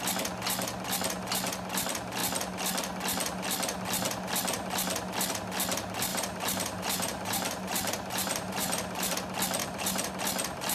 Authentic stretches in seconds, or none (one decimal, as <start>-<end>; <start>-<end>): 0.0-6.1; 9.1-9.6; 10.1-10.7